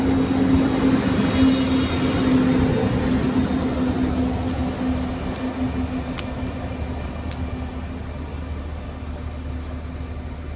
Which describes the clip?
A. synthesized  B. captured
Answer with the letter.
B